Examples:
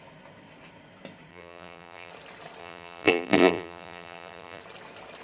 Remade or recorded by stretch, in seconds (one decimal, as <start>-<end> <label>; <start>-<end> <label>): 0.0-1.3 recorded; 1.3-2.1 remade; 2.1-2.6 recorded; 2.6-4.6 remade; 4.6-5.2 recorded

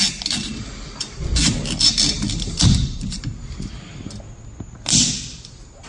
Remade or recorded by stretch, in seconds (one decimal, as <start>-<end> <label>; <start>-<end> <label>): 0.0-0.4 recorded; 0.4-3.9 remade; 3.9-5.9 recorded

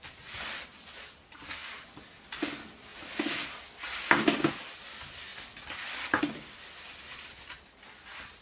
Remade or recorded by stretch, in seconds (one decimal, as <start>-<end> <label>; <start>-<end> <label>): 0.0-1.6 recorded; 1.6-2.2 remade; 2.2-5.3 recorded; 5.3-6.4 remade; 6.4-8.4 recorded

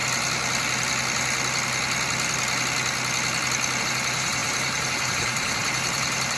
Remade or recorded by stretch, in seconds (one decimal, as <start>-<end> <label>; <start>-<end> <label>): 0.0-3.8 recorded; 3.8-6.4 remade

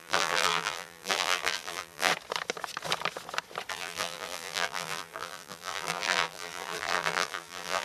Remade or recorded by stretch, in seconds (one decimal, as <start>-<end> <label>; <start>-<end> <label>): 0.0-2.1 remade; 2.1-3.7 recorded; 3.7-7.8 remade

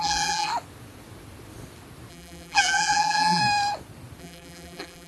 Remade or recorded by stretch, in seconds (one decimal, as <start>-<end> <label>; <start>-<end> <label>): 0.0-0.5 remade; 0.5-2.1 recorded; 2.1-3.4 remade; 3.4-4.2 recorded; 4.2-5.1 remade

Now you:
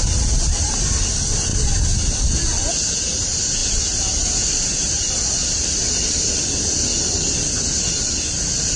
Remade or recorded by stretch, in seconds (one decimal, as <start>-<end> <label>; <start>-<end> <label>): 0.0-1.5 recorded; 1.5-2.2 remade; 2.2-8.8 recorded

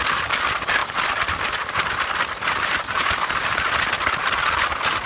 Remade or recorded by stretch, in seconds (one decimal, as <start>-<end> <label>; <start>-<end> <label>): 0.0-0.8 recorded; 0.8-3.9 remade; 3.9-5.1 recorded